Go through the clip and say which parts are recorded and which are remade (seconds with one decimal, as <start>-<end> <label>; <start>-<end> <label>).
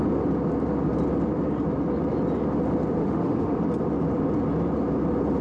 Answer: 0.0-3.0 recorded; 3.0-3.6 remade; 3.6-5.4 recorded